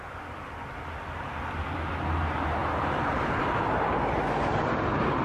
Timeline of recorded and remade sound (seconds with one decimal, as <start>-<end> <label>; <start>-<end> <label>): 0.0-5.2 recorded